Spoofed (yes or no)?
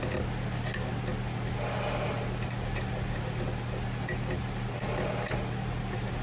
no